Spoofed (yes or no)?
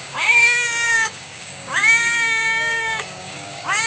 yes